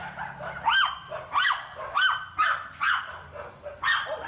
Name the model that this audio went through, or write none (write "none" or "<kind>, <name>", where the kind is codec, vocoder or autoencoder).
none